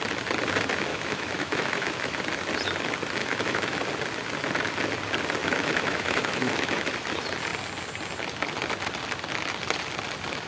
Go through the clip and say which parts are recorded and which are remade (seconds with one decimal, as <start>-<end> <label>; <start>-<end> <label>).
0.0-0.9 recorded; 0.9-2.2 remade; 2.2-3.2 recorded; 3.2-3.8 remade; 3.8-5.4 recorded; 5.4-6.9 remade; 6.9-10.5 recorded